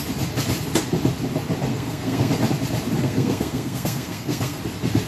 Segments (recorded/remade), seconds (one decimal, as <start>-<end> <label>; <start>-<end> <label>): 0.0-1.7 recorded; 1.7-2.3 remade; 2.3-3.0 recorded; 3.0-4.6 remade; 4.6-5.1 recorded